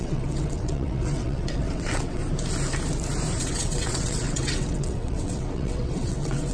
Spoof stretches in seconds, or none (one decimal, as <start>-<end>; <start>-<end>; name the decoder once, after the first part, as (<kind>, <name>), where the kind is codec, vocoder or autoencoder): 0.0-2.2 (vocoder, WaveNeXt); 3.4-6.5

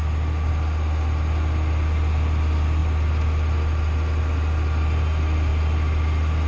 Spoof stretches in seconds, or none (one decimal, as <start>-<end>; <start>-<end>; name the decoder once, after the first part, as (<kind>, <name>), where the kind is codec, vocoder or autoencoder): none

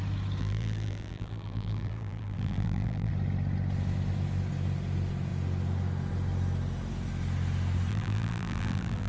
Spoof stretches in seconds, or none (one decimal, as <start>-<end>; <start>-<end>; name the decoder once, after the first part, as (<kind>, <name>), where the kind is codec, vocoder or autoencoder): 0.4-3.1 (vocoder, BigVGAN v2); 7.9-9.1

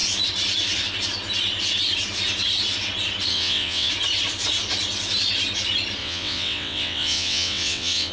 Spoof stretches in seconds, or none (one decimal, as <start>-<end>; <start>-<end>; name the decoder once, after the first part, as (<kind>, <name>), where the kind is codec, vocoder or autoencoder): 3.3-3.9 (vocoder, WaveNeXt); 6.0-8.1